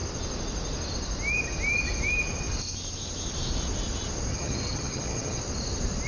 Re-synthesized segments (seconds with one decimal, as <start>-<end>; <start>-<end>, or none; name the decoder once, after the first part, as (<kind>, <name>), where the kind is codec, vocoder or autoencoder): 4.3-5.4 (vocoder, HiFi-GAN)

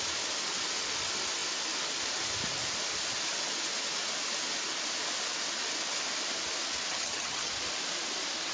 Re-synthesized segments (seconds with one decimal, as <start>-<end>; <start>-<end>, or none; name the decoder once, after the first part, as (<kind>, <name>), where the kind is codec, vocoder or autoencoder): 6.9-7.5 (vocoder, HiFi-GAN)

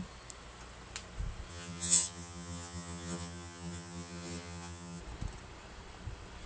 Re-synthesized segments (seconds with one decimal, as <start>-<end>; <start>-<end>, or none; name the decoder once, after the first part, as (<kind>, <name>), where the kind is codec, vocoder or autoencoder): 1.5-5.0 (vocoder, HiFi-GAN)

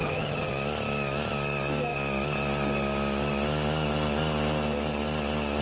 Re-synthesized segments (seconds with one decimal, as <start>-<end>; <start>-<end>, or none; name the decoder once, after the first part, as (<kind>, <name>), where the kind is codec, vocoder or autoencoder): 0.0-0.5 (vocoder, HiFi-GAN)

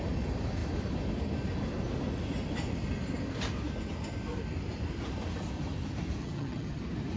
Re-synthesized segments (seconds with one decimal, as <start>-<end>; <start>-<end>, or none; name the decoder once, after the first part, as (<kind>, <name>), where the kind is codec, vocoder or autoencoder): 6.2-6.8 (vocoder, HiFi-GAN)

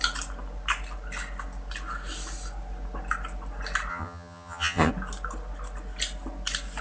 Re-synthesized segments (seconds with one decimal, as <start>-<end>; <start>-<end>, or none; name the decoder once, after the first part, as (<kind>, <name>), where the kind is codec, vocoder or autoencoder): 3.9-4.9 (vocoder, HiFi-GAN)

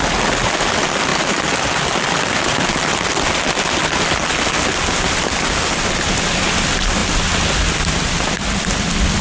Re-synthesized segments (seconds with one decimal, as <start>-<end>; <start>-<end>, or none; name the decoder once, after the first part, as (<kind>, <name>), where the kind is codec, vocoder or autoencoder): none